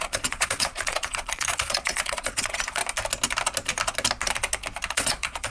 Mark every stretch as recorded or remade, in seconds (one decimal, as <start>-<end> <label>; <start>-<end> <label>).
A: 0.0-2.8 remade; 2.8-4.9 recorded; 4.9-5.5 remade